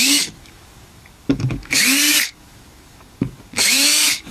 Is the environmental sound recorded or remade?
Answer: remade